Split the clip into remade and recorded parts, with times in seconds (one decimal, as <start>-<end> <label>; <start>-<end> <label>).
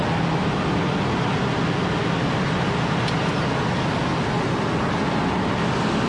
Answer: 0.0-6.1 recorded